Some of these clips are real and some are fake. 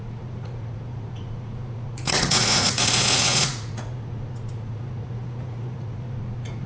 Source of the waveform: fake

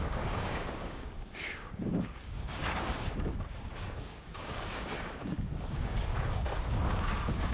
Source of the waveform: fake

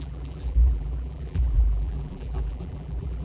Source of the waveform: fake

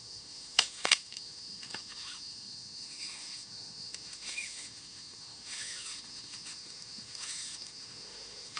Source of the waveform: fake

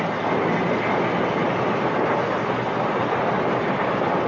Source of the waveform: real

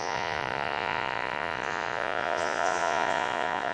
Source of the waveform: fake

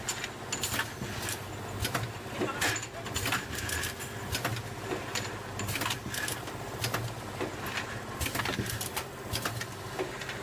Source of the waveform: real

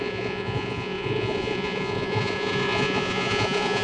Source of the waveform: fake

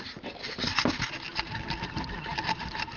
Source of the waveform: real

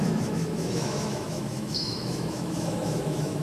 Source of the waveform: fake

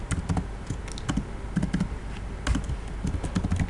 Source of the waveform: real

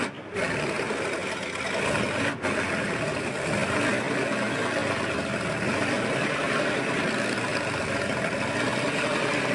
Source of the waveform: real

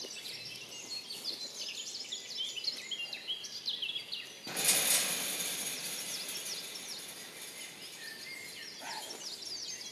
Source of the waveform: real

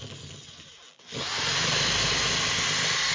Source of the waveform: real